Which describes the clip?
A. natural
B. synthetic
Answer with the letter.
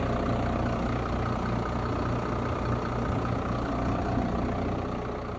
A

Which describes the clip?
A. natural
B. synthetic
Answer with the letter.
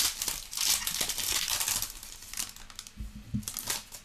A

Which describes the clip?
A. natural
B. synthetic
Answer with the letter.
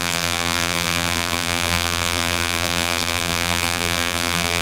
B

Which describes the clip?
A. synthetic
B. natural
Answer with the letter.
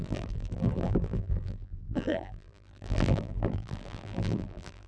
A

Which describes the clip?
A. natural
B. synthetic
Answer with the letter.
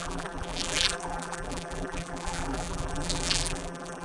B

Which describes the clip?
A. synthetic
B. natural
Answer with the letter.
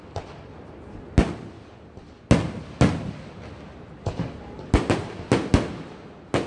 B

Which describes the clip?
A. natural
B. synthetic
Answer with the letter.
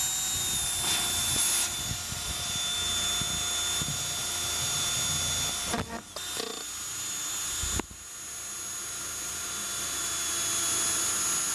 A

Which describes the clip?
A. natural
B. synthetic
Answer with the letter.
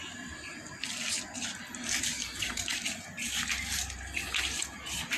A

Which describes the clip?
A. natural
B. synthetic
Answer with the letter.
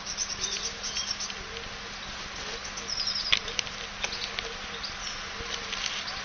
A